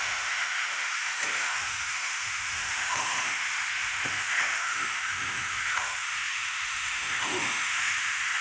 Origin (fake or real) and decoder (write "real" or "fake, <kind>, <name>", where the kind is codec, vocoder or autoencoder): fake, autoencoder, DAC-VAE